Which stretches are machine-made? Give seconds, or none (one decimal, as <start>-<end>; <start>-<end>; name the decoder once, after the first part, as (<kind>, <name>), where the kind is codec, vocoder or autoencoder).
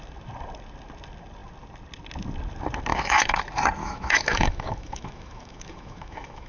2.9-3.4 (autoencoder, DAC-VAE); 3.8-6.5